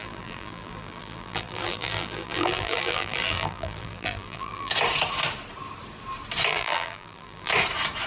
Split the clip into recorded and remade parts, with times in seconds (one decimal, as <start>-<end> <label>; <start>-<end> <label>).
0.0-4.7 remade; 4.7-6.5 recorded; 6.5-7.5 remade; 7.5-8.1 recorded